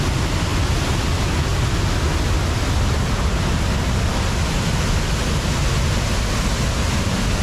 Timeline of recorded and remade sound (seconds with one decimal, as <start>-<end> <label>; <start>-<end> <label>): 0.0-7.4 recorded